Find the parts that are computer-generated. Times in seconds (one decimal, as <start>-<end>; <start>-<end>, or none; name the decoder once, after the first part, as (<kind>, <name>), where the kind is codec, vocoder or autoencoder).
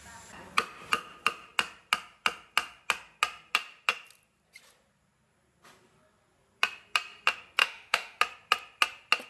7.6-8.2 (autoencoder, DAC-VAE)